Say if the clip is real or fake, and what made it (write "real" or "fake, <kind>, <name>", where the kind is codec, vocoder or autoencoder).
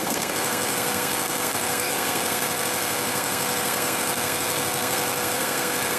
fake, codec, SNAC